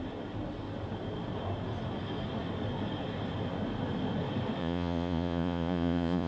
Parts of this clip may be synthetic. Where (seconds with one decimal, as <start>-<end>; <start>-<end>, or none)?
4.6-6.3